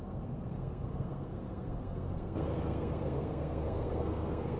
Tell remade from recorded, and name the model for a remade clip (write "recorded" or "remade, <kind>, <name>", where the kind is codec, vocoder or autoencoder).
remade, codec, SNAC